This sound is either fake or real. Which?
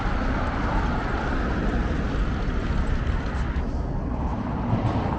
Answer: real